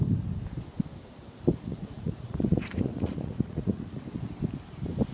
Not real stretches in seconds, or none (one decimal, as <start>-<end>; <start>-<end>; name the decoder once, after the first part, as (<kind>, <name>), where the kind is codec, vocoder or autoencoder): 1.5-4.0 (vocoder, Vocos)